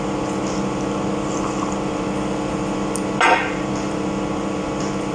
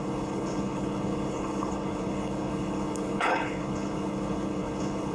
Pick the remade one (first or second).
second